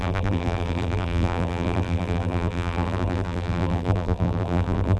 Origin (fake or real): fake